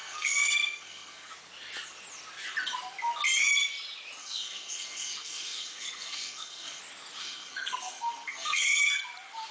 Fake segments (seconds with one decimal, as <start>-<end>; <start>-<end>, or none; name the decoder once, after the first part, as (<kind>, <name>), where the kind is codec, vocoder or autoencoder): 0.0-1.3 (codec, SNAC); 4.2-6.8; 7.2-9.0